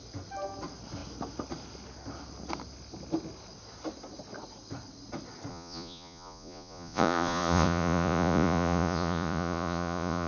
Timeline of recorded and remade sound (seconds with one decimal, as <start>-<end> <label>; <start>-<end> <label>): 0.0-5.5 recorded; 5.5-10.3 remade